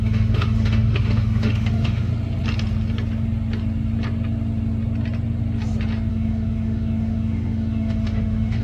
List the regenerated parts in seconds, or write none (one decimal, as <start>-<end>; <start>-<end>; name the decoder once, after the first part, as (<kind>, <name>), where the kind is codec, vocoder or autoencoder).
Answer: 0.0-2.1 (autoencoder, DAC-VAE); 6.1-8.6

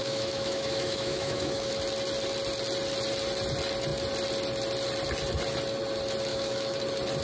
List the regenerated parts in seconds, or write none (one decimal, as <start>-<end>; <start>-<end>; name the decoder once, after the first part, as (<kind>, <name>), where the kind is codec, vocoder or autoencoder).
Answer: 0.0-1.7 (autoencoder, DAC-VAE); 6.3-6.8

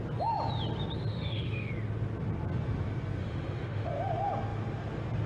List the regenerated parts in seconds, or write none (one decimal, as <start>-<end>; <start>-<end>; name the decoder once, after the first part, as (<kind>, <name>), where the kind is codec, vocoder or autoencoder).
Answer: 1.1-1.7 (autoencoder, DAC-VAE); 3.2-3.9